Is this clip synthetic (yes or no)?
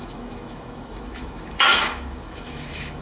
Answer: yes